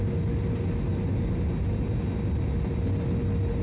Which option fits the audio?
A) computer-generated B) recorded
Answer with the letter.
B